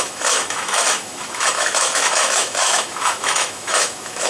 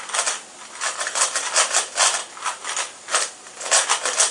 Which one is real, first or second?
second